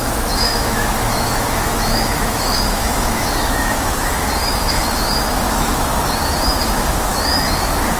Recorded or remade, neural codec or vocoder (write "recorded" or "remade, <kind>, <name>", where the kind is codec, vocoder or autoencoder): remade, autoencoder, DAC-VAE